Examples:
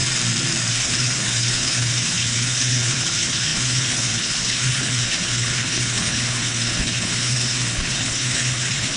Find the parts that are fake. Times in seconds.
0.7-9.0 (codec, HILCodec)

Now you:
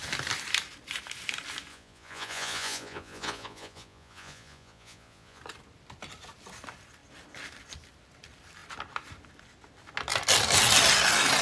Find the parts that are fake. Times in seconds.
1.7-5.4 (vocoder, Vocos)

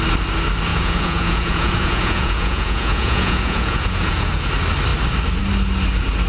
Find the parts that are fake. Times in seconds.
0.7-4.5 (vocoder, Vocos)

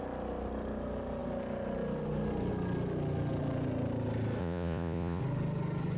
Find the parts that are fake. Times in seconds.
4.4-5.2 (vocoder, Vocos)

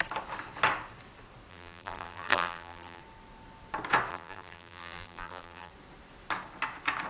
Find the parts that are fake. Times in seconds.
1.5-3.0 (vocoder, BigVGAN v2); 4.1-5.7

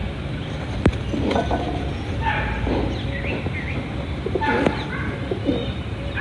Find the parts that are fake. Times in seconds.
none

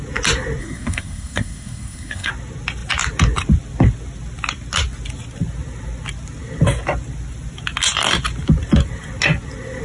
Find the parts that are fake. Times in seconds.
0.6-2.3 (codec, SNAC)